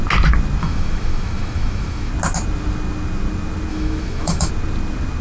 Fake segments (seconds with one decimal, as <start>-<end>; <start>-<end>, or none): 0.6-2.1; 3.7-4.5